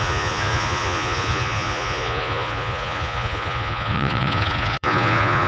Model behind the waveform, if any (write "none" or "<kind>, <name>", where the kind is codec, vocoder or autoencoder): vocoder, Vocos